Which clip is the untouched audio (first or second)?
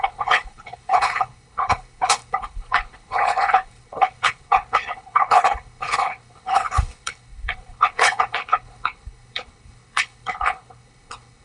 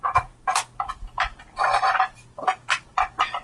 second